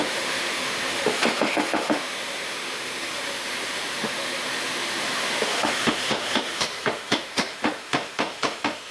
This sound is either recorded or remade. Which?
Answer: remade